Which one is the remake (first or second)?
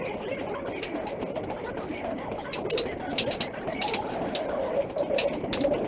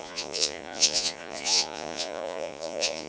second